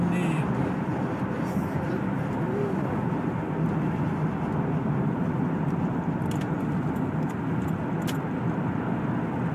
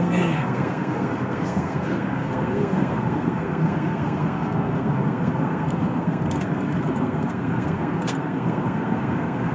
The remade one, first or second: second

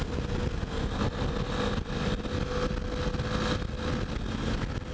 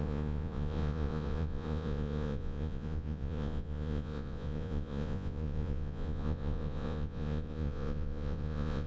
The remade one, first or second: second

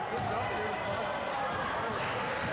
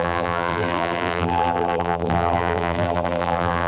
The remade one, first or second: second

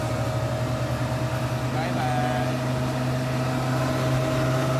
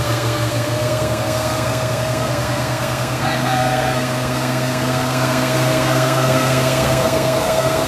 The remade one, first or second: second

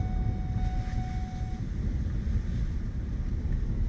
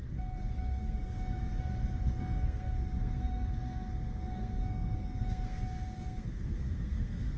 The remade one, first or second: second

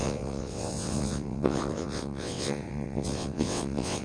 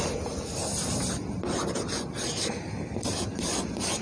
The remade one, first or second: first